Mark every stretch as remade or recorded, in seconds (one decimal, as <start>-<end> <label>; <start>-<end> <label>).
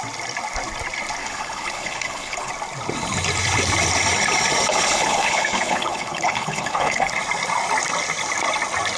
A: 0.0-1.2 recorded; 1.2-2.5 remade; 2.5-4.7 recorded; 4.7-7.1 remade; 7.1-9.0 recorded